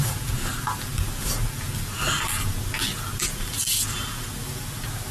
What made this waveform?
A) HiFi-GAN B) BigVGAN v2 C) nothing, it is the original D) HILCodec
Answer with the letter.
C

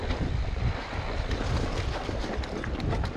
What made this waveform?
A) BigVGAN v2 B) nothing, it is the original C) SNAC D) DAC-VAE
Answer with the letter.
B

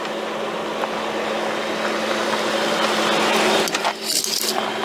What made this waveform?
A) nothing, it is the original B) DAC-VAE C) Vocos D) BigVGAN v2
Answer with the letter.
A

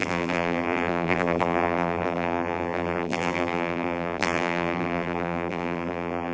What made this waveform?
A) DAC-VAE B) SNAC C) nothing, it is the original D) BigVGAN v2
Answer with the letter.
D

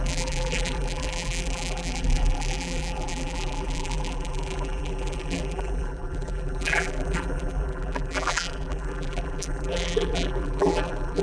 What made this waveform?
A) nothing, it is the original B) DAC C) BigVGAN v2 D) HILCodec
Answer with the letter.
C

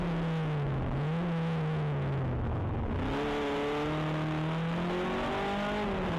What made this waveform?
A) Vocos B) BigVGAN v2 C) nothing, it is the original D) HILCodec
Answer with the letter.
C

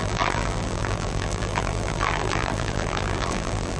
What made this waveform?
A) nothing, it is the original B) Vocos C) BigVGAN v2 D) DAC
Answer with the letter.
C